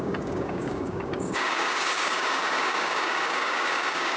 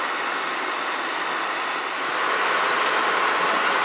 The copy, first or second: first